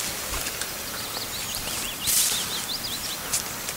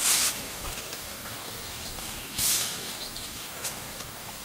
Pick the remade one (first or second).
second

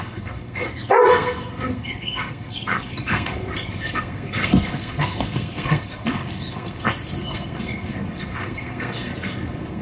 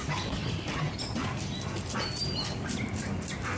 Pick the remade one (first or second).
first